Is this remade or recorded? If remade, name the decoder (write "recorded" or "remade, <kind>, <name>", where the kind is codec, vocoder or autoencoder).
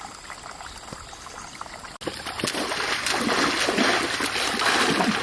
recorded